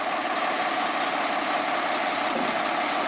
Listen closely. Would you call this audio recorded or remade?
recorded